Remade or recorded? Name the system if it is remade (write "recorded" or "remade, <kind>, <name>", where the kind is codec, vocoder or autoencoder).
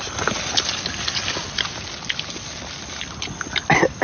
recorded